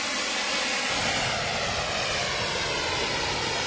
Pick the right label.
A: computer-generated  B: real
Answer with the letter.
B